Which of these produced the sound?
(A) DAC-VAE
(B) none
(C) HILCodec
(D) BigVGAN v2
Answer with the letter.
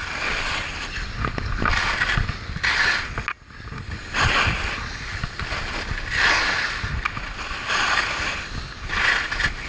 B